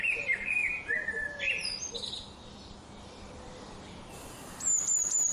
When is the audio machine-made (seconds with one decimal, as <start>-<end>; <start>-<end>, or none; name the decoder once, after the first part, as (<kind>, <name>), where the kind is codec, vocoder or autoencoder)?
0.0-5.3 (vocoder, BigVGAN v2)